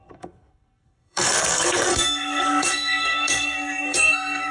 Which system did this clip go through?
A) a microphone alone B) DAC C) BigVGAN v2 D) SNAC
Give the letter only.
D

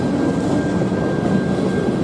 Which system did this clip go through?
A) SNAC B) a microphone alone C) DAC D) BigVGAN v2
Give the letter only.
B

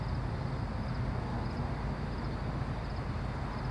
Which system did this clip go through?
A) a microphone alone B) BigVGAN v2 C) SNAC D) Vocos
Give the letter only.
A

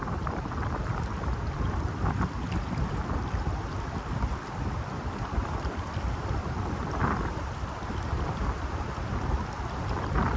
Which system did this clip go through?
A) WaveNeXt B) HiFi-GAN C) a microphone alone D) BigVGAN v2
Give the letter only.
D